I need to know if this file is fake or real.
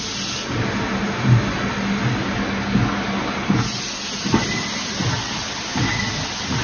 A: real